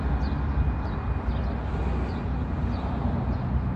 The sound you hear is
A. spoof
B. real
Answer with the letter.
B